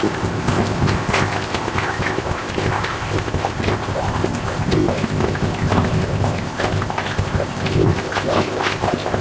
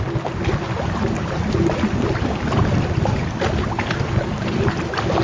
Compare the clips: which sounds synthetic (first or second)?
first